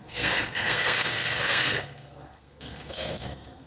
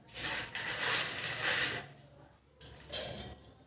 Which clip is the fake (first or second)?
first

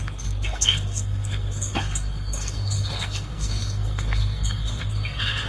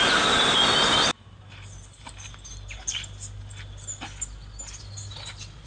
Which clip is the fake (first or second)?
first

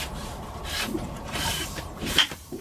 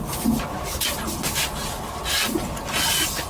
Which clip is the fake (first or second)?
first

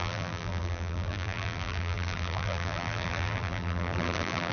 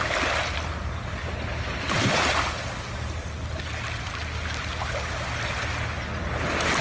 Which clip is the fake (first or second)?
first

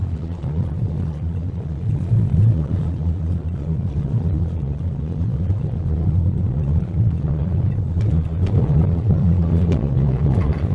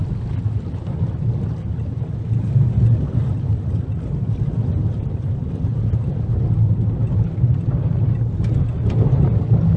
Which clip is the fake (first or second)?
first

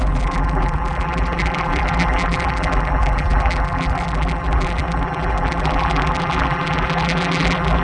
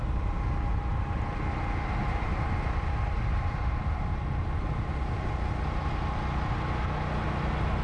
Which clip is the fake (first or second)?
first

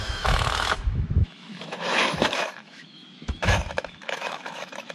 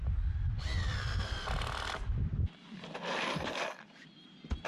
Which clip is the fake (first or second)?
first